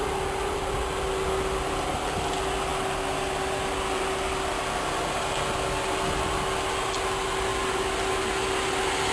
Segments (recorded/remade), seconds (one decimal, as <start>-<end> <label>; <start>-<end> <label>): 0.0-9.1 recorded

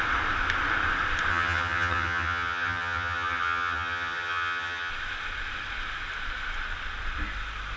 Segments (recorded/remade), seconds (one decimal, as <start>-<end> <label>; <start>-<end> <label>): 0.0-1.3 recorded; 1.3-4.9 remade; 4.9-7.8 recorded

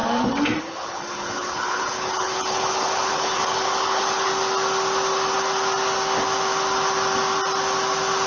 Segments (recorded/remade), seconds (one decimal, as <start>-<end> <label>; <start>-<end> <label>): 0.0-0.6 recorded; 0.6-4.3 remade; 4.3-8.3 recorded

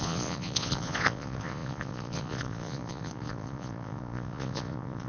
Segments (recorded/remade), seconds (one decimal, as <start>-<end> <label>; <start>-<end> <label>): 0.0-5.1 remade

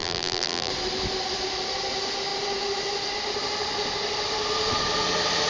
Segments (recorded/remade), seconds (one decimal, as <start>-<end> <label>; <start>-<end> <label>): 0.0-0.7 remade; 0.7-5.5 recorded